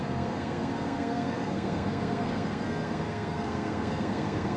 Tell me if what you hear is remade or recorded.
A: remade